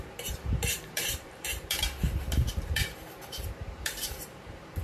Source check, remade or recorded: remade